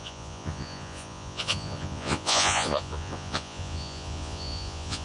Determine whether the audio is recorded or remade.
remade